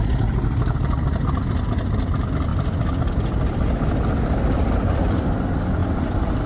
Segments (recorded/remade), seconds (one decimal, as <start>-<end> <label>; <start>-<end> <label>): 0.0-0.6 recorded; 0.6-1.2 remade; 1.2-6.5 recorded